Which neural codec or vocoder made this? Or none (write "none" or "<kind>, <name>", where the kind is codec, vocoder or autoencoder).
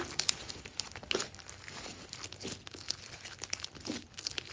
none